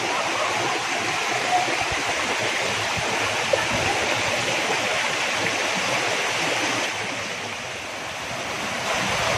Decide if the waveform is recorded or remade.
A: recorded